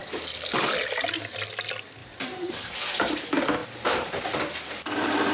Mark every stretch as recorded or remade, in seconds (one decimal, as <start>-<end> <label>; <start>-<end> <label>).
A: 0.0-2.0 recorded; 2.0-2.5 remade; 2.5-3.6 recorded; 3.6-4.2 remade; 4.2-5.3 recorded